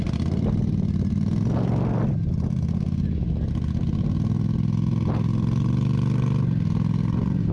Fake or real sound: real